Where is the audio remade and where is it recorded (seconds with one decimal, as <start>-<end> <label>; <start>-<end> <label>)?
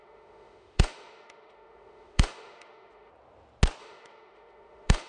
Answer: 0.0-3.1 remade; 3.1-3.8 recorded; 3.8-5.1 remade